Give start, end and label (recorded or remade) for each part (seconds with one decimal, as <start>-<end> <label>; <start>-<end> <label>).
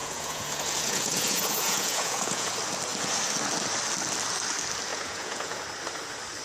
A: 0.0-2.5 remade; 2.5-4.9 recorded; 4.9-5.6 remade; 5.6-6.4 recorded